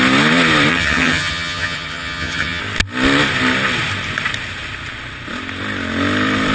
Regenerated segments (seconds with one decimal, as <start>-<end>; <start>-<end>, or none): 0.7-2.6